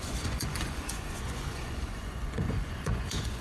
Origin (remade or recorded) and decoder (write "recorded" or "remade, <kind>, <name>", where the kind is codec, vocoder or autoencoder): remade, vocoder, Vocos